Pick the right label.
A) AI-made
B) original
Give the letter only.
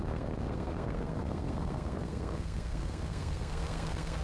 A